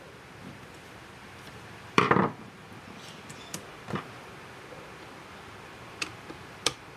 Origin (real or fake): fake